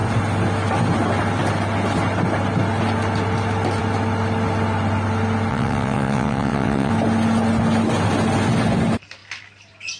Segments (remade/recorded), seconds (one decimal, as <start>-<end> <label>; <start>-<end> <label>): 0.0-5.5 recorded; 5.5-6.9 remade; 6.9-10.0 recorded